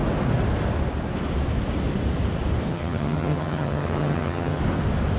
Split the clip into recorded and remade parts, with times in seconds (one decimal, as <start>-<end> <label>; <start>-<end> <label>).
0.0-2.7 recorded; 2.7-4.6 remade; 4.6-5.2 recorded